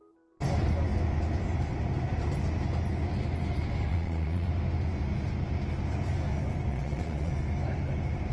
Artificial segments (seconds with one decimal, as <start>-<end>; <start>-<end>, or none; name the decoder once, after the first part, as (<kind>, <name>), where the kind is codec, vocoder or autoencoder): 3.9-4.5 (vocoder, Vocos); 6.7-7.3